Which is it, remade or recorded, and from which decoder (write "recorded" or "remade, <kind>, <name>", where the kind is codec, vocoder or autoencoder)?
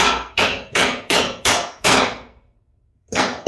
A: remade, codec, SNAC